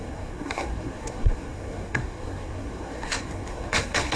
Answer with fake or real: fake